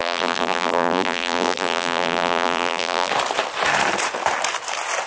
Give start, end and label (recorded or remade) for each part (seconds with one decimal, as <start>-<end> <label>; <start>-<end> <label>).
0.0-3.1 remade; 3.1-5.1 recorded